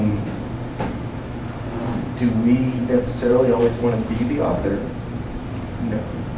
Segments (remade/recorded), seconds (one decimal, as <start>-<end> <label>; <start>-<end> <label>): 0.0-2.8 recorded; 2.8-4.2 remade; 4.2-4.8 recorded; 4.8-5.4 remade; 5.4-6.4 recorded